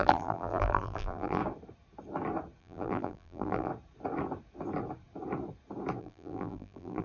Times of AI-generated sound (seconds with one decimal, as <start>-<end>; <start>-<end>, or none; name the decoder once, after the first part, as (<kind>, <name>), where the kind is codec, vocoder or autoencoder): 0.0-1.4 (vocoder, BigVGAN v2); 2.6-3.7; 6.0-7.0